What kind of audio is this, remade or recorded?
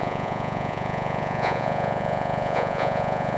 remade